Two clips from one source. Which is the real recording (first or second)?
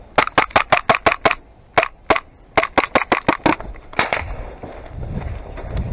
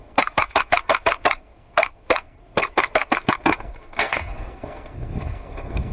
first